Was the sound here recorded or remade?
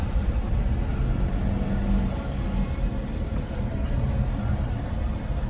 recorded